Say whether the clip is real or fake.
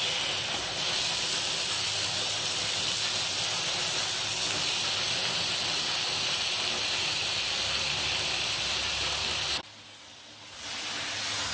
real